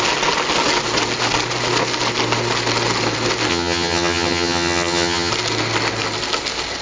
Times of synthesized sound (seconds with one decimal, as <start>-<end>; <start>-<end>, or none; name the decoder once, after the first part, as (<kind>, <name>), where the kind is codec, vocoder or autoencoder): 3.5-5.3 (vocoder, HiFi-GAN)